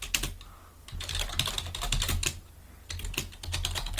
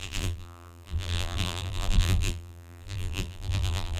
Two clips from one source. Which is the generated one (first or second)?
second